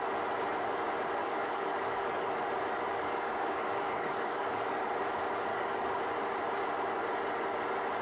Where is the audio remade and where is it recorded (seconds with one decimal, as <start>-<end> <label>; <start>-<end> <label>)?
0.0-1.2 recorded; 1.2-2.3 remade; 2.3-2.9 recorded; 2.9-4.8 remade; 4.8-5.5 recorded; 5.5-6.0 remade; 6.0-8.0 recorded